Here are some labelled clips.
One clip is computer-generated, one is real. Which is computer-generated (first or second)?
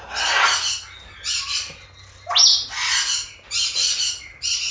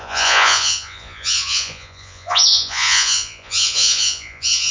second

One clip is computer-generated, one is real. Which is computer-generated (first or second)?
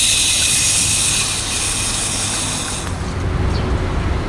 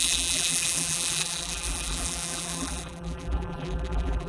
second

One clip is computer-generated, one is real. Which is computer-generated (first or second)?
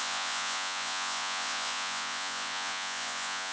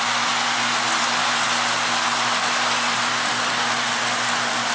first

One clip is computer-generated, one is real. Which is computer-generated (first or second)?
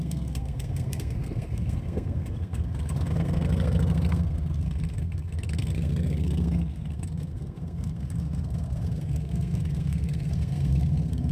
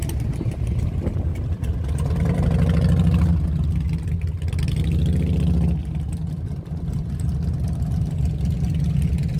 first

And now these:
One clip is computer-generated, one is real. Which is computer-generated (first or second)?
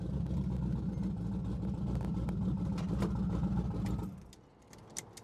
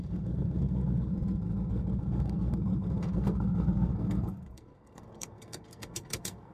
second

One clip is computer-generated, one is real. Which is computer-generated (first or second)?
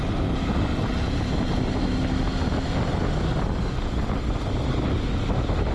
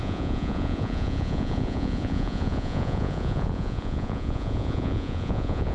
second